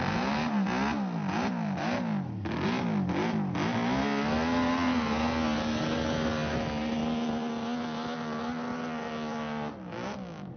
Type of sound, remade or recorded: recorded